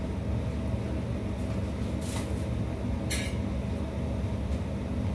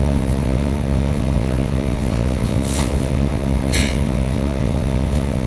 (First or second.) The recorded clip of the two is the first